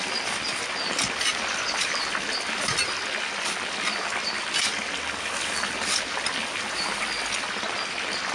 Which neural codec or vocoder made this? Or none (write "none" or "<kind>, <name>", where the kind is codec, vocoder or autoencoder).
none